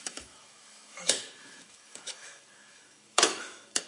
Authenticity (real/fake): fake